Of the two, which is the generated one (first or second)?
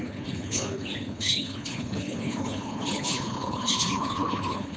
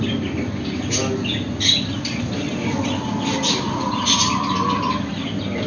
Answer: first